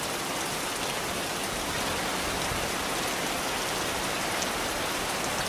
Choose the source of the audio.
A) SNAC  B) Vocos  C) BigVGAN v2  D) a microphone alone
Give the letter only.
C